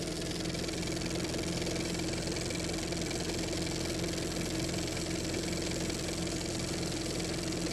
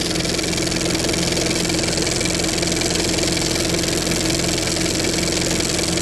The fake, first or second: first